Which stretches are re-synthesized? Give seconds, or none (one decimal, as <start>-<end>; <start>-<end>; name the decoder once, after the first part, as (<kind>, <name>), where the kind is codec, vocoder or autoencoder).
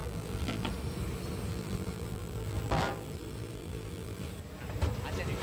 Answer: 0.0-0.7 (vocoder, BigVGAN v2); 1.5-4.3